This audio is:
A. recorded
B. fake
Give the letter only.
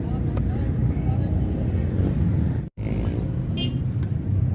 A